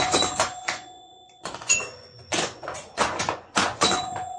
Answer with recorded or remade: remade